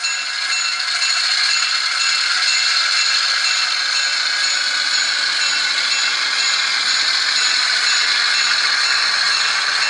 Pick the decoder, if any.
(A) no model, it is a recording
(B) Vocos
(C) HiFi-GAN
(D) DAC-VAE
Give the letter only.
A